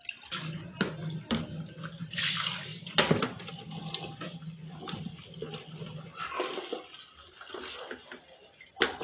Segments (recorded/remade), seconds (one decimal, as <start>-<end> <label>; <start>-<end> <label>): 0.0-9.0 recorded